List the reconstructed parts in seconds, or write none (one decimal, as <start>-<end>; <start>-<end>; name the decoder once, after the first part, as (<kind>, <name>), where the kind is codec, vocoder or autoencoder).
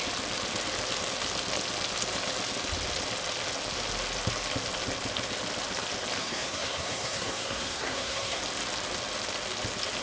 6.2-8.4 (codec, SNAC)